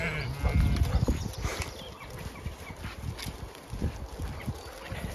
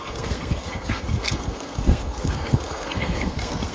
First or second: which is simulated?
second